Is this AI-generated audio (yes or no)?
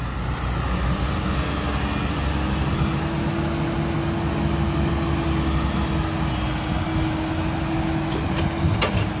no